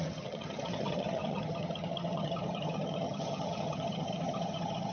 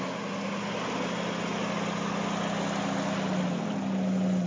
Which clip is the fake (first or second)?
first